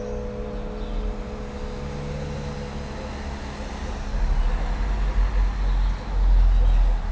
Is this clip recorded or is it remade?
recorded